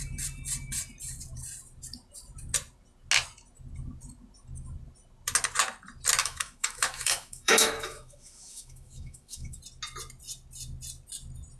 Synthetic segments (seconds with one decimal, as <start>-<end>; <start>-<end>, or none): 6.2-9.6